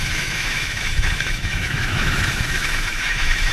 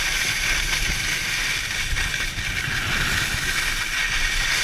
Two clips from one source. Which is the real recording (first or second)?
second